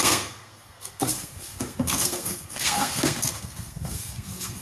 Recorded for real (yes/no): no